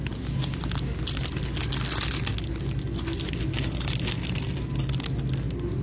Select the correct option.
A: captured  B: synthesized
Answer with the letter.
A